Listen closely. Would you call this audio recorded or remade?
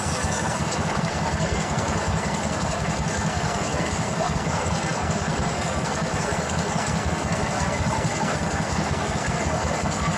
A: remade